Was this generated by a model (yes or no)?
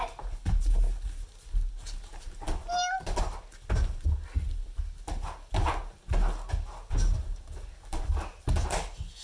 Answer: no